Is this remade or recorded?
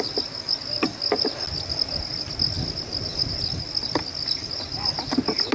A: recorded